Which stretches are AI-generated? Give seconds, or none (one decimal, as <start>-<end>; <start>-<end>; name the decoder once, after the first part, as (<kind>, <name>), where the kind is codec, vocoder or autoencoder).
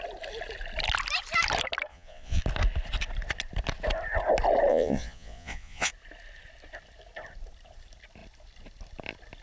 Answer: 1.9-2.4 (vocoder, Vocos); 4.7-5.9